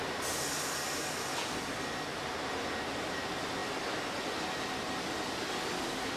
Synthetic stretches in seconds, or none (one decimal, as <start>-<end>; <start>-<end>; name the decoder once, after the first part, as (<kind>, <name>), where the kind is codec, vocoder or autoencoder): none